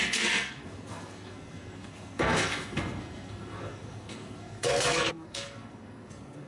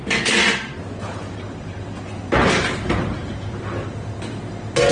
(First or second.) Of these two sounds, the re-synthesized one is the first